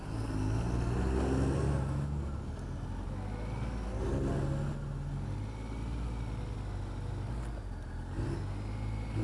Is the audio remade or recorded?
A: recorded